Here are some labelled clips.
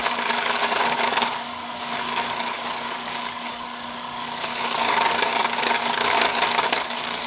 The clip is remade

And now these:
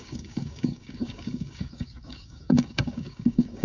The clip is remade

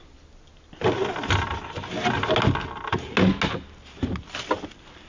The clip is recorded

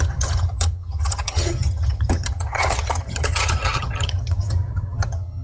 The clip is remade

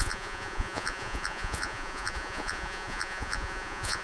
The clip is remade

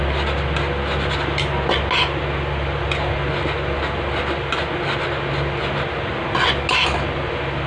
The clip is recorded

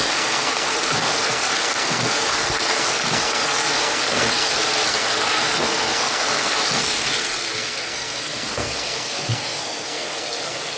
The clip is remade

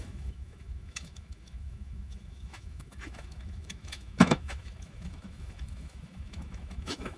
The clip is remade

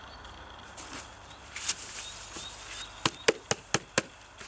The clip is recorded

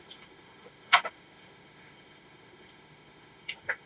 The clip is remade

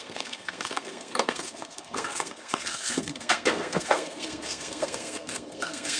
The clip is remade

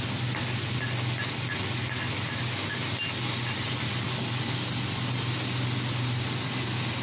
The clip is recorded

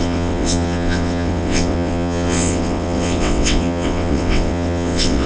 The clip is remade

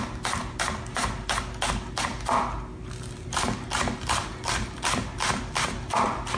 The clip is recorded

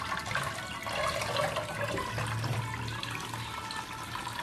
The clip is recorded